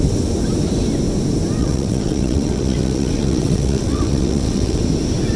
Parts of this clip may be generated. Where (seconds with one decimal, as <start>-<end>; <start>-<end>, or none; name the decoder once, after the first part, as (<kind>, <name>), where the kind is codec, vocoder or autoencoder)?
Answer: 1.6-4.8 (vocoder, WaveNeXt)